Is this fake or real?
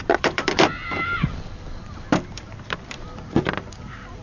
fake